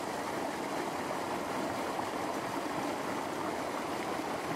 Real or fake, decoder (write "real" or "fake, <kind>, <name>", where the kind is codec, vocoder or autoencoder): fake, vocoder, BigVGAN v2